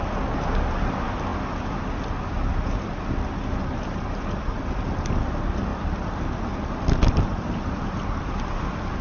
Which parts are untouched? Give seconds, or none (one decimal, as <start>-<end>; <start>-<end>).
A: 0.0-9.0